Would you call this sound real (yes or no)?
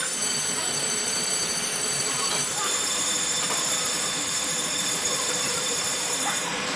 no